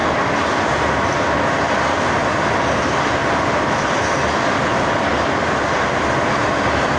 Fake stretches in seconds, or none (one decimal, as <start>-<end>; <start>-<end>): 3.2-4.1